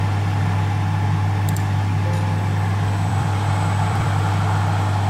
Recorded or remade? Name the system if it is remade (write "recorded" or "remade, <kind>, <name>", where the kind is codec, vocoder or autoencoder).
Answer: remade, vocoder, BigVGAN v2